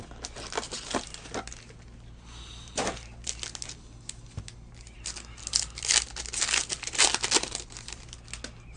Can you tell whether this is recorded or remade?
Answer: recorded